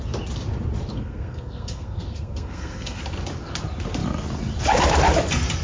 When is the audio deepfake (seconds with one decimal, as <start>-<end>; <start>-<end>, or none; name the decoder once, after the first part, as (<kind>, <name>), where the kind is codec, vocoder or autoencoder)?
0.9-3.0 (codec, SNAC)